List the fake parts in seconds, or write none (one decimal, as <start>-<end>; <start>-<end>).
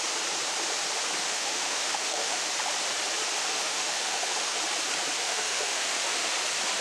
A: 1.2-2.4; 3.5-4.6; 5.2-6.3